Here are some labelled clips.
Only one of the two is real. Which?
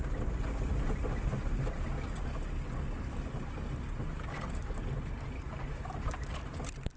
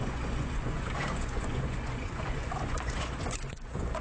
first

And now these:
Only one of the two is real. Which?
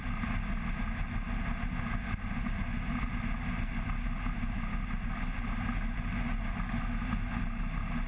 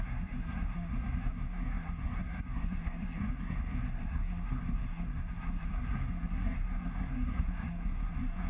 first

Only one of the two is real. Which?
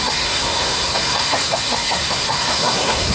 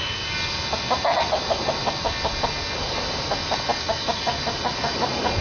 second